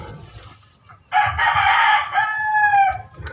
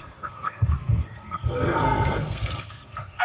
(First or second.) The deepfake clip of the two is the second